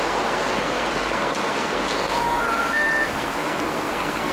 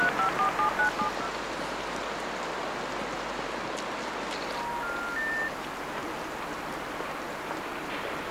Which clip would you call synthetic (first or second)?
first